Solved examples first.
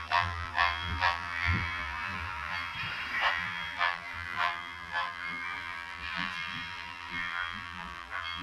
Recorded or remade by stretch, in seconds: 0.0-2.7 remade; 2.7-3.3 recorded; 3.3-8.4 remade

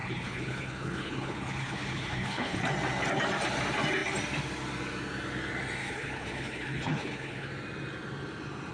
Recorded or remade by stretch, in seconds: 0.0-2.6 remade; 2.6-5.8 recorded; 5.8-7.5 remade; 7.5-8.7 recorded

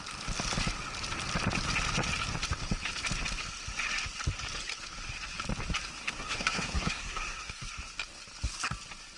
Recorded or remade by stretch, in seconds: 0.0-6.0 recorded; 6.0-7.7 remade; 7.7-9.2 recorded

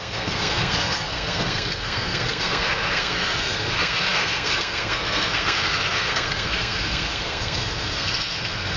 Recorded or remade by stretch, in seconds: 0.0-8.8 remade

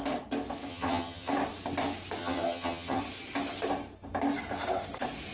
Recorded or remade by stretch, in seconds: 0.0-0.7 recorded; 0.7-1.3 remade; 1.3-2.2 recorded; 2.2-3.0 remade; 3.0-5.3 recorded

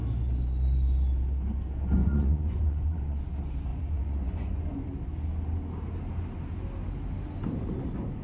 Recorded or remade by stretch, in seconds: 0.0-2.0 recorded; 2.0-3.2 remade; 3.2-3.7 recorded; 3.7-4.8 remade; 4.8-8.2 recorded

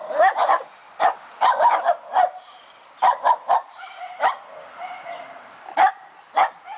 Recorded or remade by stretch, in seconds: 0.0-0.8 remade; 0.8-3.3 recorded; 3.3-6.8 remade

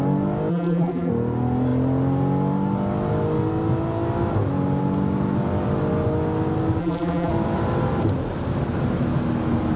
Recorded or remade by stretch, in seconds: 0.0-0.5 recorded; 0.5-1.1 remade; 1.1-6.8 recorded; 6.8-7.3 remade; 7.3-9.8 recorded